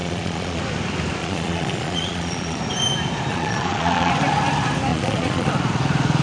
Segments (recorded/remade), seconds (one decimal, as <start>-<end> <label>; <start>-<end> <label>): 0.0-0.6 remade; 0.6-1.2 recorded; 1.2-2.6 remade; 2.6-3.3 recorded; 3.3-4.1 remade; 4.1-4.9 recorded; 4.9-5.5 remade; 5.5-6.2 recorded